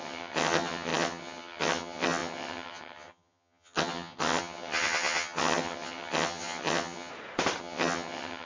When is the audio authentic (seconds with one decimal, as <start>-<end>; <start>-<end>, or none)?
7.1-7.6